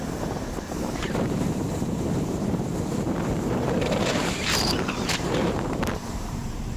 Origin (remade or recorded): remade